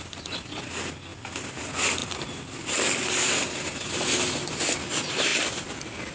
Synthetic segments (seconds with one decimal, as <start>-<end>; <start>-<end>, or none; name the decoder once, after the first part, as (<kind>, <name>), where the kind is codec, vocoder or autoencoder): none